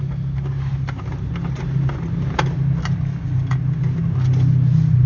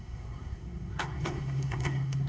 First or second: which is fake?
second